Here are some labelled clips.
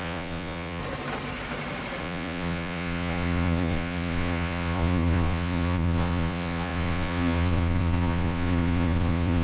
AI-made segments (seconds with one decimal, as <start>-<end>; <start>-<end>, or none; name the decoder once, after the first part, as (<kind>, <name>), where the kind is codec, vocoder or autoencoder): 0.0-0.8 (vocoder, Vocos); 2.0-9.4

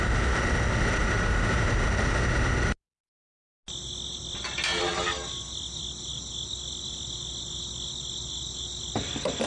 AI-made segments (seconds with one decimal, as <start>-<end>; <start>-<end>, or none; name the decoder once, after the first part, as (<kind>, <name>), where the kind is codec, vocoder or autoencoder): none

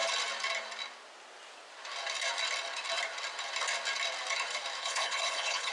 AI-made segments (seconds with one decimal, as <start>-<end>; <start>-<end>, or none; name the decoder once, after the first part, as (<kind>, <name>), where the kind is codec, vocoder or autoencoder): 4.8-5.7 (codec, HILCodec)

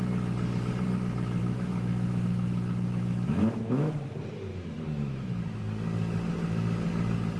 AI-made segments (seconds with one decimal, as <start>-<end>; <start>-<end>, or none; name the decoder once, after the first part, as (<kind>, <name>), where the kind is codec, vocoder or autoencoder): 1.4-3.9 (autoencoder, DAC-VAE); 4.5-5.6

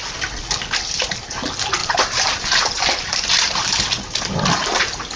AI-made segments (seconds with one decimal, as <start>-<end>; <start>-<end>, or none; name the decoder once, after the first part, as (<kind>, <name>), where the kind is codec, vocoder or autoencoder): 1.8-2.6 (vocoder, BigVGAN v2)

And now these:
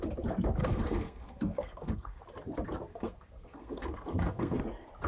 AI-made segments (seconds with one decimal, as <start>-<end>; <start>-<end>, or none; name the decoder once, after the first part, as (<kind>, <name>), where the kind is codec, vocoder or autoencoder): 0.6-2.2 (codec, SNAC); 2.9-4.6